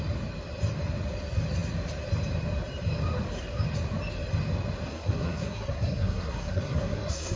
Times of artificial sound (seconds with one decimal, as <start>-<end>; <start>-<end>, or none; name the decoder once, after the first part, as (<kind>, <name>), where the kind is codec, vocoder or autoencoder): 4.9-7.4 (codec, SNAC)